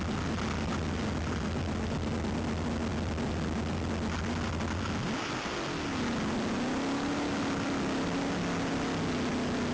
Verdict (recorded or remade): recorded